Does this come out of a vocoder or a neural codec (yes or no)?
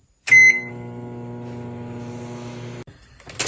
no